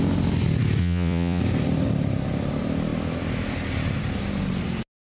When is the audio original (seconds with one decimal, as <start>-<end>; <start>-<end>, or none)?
0.0-0.8; 1.4-5.1